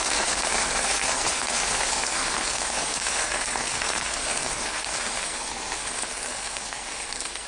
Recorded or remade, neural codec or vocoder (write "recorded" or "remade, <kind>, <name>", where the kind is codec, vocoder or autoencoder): remade, codec, SNAC